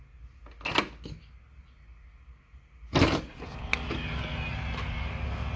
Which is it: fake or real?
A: real